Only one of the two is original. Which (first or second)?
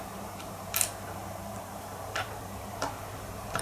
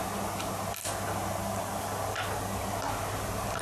second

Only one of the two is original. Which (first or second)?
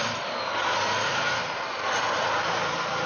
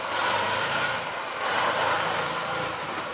first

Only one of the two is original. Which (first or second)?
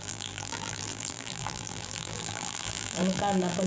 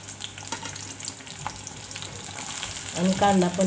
second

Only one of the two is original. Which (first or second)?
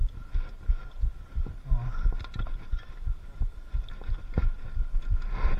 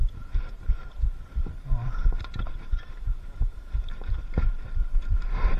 first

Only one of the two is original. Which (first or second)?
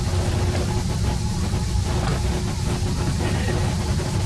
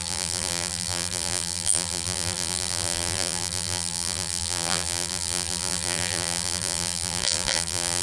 first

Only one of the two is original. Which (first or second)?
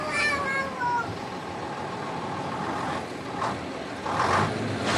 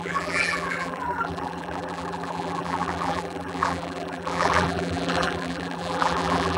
first